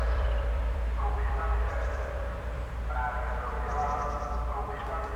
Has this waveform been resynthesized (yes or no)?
yes